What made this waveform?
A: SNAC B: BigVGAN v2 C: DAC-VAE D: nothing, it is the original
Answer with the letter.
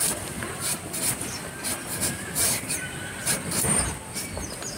B